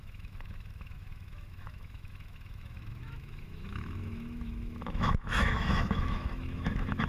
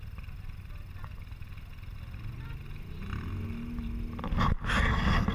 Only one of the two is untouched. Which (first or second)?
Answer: second